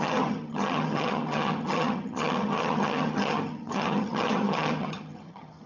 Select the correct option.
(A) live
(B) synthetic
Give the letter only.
B